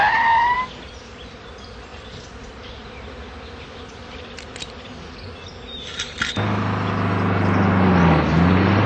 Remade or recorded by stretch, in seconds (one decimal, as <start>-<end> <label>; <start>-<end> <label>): 0.0-1.9 recorded; 1.9-3.1 remade; 3.1-8.9 recorded